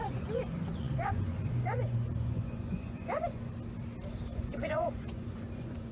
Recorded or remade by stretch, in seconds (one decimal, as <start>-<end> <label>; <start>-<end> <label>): 0.0-3.5 remade; 3.5-4.3 recorded; 4.3-5.9 remade